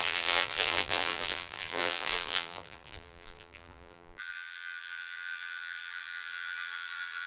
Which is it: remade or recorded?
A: remade